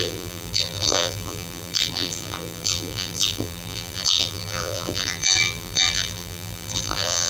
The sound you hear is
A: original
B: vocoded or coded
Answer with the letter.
B